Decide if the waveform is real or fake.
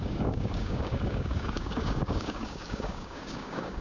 fake